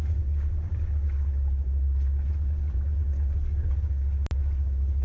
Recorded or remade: recorded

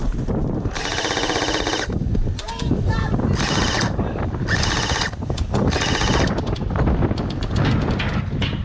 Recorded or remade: recorded